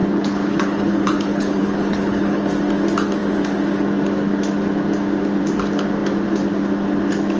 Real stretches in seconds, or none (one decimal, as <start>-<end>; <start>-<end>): 2.5-7.4